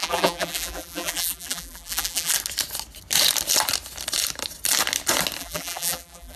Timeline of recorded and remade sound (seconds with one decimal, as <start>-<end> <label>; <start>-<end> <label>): 0.0-2.3 remade; 2.3-5.4 recorded; 5.4-6.4 remade